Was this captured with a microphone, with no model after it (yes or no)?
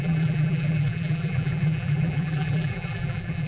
no